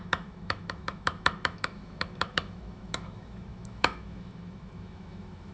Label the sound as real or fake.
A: fake